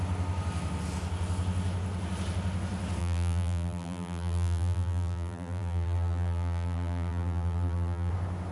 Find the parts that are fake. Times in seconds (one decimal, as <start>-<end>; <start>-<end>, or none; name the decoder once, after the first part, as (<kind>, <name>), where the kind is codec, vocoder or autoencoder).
3.0-8.1 (vocoder, BigVGAN v2)